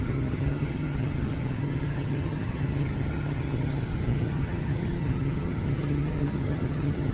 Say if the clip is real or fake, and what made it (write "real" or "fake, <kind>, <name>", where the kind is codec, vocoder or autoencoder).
fake, vocoder, HiFi-GAN